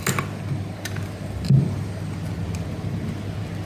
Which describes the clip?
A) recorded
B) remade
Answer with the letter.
A